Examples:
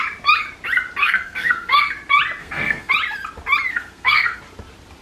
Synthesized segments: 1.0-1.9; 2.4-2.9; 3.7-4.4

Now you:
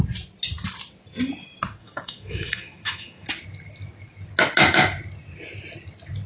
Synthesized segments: 1.8-3.3

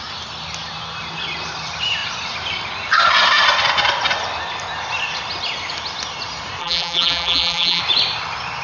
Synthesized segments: 6.6-7.8